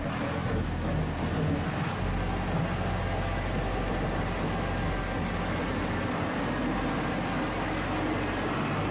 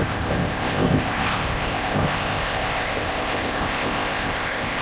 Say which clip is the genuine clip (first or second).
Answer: first